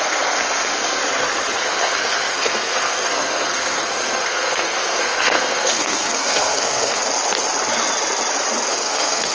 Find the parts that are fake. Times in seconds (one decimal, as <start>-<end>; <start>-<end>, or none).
0.0-1.0; 1.6-7.0; 8.7-9.3